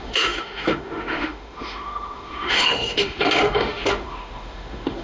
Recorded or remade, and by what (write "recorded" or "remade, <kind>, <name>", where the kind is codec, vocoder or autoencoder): remade, autoencoder, DAC-VAE